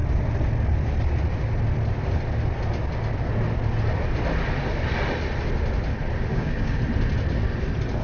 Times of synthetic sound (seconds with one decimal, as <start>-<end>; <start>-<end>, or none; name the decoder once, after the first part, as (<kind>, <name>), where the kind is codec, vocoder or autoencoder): 6.3-6.8 (codec, DAC)